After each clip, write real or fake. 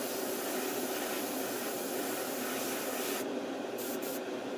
real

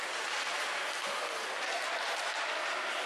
real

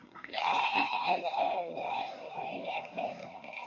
fake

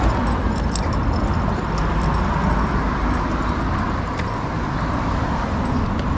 real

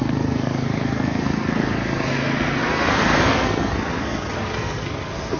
fake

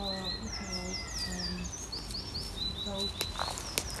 real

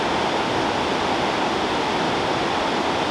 real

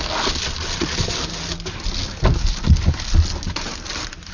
real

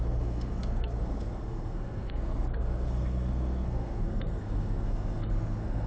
fake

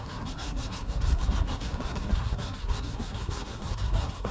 fake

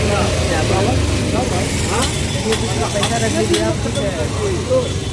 real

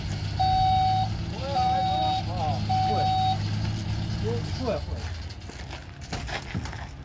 real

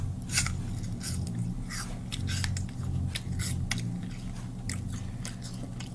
real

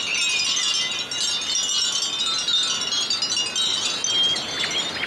real